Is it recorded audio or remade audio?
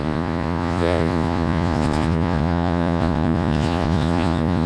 remade